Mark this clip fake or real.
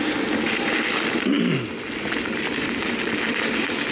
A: real